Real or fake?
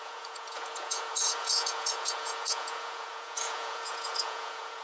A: fake